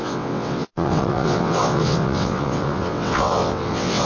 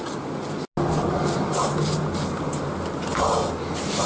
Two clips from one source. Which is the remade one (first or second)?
first